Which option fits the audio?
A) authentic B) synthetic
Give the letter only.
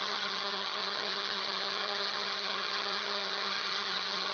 B